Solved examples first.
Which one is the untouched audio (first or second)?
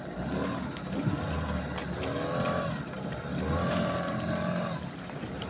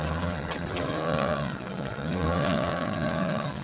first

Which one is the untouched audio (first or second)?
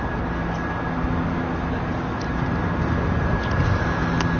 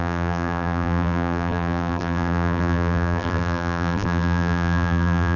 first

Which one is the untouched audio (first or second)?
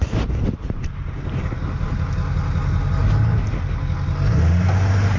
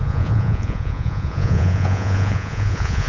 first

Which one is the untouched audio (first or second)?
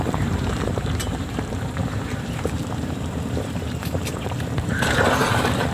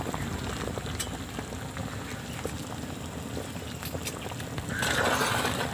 second